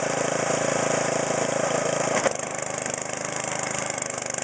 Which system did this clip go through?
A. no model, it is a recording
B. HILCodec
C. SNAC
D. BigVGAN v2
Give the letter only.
D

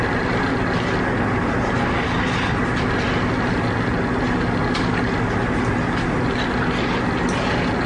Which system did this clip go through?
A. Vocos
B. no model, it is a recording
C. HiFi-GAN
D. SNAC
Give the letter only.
B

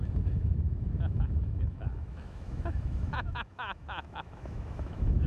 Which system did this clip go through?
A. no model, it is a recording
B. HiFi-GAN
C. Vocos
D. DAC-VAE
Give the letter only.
D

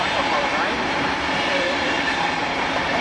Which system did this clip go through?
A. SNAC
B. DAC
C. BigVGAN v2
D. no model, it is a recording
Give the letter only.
C